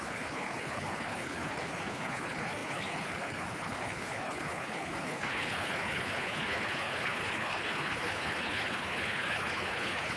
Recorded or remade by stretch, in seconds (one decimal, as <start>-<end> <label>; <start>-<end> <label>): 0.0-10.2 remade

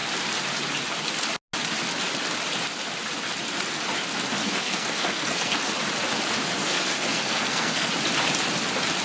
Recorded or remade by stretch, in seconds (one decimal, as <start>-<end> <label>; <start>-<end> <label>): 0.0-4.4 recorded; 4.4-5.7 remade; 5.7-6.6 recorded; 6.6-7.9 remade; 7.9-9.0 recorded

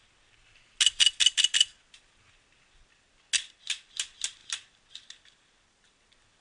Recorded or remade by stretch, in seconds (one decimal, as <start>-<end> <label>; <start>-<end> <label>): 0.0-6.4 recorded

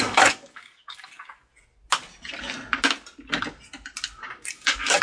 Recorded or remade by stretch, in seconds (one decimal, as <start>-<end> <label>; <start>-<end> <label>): 0.0-1.5 remade; 1.5-4.5 recorded; 4.5-5.0 remade

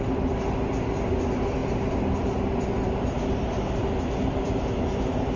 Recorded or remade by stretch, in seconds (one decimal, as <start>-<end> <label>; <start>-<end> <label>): 0.0-5.4 recorded

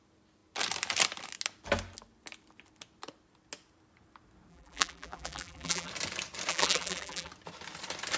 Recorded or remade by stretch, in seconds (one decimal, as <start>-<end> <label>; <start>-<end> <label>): 0.0-4.5 recorded; 4.5-5.9 remade; 5.9-6.5 recorded; 6.5-7.3 remade; 7.3-8.2 recorded

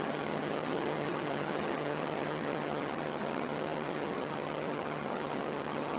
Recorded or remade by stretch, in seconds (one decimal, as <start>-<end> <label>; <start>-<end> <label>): 0.0-6.0 remade

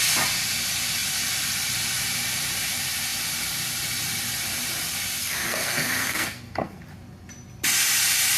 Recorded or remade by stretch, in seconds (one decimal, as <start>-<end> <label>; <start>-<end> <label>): 0.0-5.2 recorded; 5.2-6.8 remade; 6.8-8.4 recorded